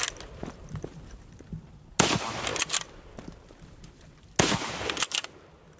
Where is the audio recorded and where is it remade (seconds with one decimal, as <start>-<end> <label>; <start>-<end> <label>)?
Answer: 0.0-5.8 recorded